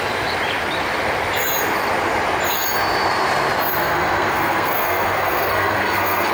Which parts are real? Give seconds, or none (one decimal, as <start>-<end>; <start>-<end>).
0.0-3.8